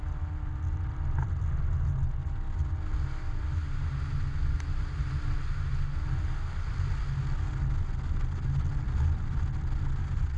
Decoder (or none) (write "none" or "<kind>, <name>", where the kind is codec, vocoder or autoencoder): none